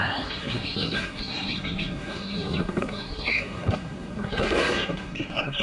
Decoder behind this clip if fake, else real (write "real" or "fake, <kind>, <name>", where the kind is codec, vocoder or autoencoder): fake, codec, SNAC